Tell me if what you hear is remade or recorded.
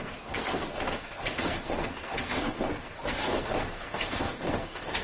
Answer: remade